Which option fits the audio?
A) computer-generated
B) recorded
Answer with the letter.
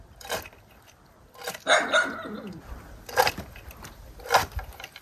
B